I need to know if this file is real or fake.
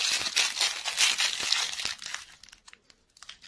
real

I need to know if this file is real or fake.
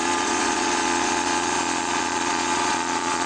fake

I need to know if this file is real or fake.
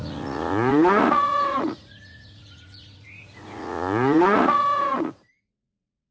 fake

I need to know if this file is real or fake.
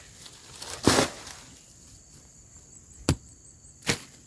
real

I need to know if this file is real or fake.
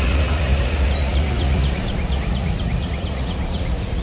fake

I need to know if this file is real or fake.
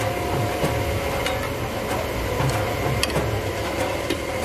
real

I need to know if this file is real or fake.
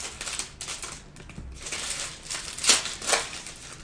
real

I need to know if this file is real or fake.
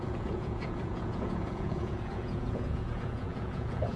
fake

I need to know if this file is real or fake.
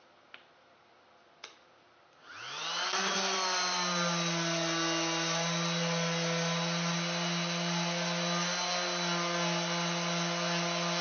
real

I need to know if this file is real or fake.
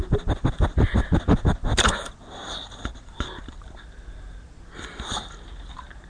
real